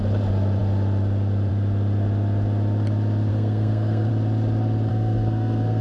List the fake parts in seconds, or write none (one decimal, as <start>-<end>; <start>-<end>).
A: 3.3-4.1; 4.9-5.8